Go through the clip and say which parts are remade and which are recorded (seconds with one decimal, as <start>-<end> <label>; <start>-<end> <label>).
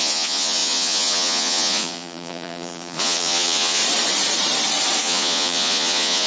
0.0-3.8 remade; 3.8-5.0 recorded; 5.0-6.3 remade